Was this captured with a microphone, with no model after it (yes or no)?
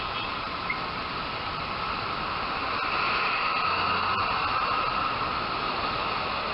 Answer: yes